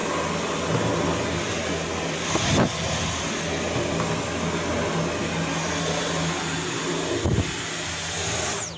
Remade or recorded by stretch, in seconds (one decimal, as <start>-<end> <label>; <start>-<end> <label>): 0.0-8.8 recorded